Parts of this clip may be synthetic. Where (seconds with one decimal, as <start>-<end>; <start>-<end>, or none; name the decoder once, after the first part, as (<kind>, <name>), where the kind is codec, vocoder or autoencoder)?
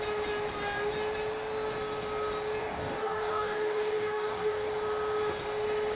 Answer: 2.6-4.7 (codec, DAC)